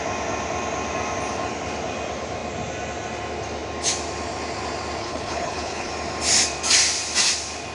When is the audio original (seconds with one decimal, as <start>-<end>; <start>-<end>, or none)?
0.0-5.0; 5.9-7.7